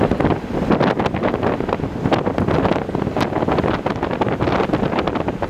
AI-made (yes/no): no